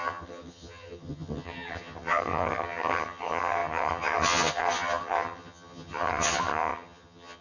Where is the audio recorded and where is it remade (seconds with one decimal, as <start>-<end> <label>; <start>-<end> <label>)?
0.0-7.4 remade